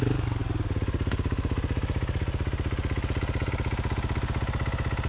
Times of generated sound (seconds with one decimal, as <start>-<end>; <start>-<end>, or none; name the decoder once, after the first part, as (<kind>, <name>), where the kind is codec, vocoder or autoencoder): none